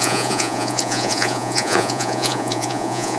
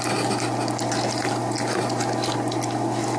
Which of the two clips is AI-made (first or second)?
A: first